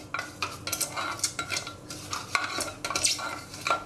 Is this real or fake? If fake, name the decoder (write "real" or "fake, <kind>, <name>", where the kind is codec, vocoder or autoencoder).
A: real